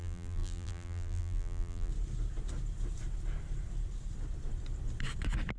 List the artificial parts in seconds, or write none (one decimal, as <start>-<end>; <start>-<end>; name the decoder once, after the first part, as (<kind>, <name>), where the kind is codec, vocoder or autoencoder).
0.0-1.9 (vocoder, BigVGAN v2)